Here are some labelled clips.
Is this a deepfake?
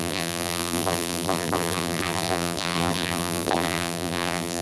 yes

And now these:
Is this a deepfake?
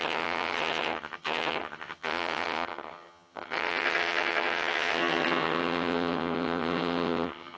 yes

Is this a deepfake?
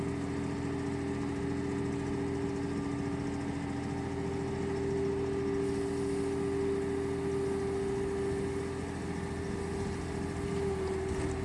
no